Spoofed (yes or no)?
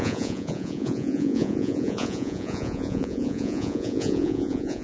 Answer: yes